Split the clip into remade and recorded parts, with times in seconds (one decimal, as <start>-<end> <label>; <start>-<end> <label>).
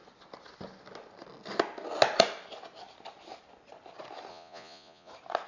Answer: 0.0-4.3 recorded; 4.3-5.1 remade; 5.1-5.5 recorded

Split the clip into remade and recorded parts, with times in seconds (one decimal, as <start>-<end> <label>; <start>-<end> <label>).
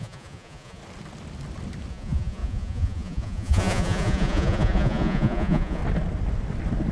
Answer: 0.0-0.8 remade; 0.8-1.9 recorded; 1.9-5.8 remade; 5.8-6.9 recorded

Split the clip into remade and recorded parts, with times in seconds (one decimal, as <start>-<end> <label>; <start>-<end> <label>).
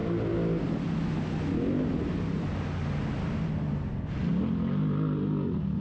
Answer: 0.0-5.8 recorded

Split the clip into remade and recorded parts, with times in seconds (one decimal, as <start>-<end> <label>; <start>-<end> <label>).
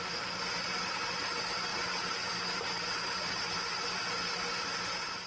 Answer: 0.0-5.3 recorded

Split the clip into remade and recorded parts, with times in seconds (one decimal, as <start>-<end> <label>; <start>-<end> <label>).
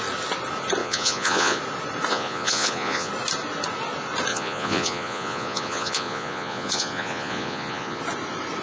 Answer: 0.0-0.8 recorded; 0.8-1.6 remade; 1.6-2.1 recorded; 2.1-3.1 remade; 3.1-4.3 recorded; 4.3-8.0 remade; 8.0-8.6 recorded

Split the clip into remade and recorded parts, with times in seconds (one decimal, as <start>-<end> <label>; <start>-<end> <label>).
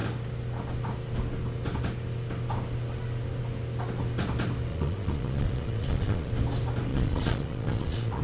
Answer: 0.0-4.7 recorded; 4.7-6.3 remade; 6.3-6.9 recorded; 6.9-8.2 remade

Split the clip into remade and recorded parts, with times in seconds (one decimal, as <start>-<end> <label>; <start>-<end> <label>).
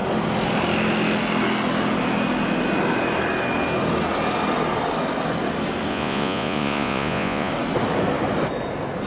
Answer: 0.0-5.9 recorded; 5.9-7.5 remade; 7.5-9.1 recorded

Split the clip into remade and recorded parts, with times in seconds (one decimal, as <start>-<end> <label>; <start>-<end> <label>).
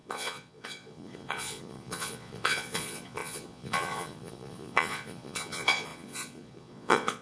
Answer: 0.0-7.2 remade